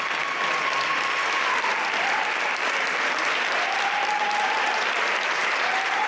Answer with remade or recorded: remade